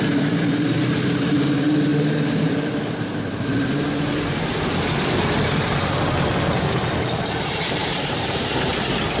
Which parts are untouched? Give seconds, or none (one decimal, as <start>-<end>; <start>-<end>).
none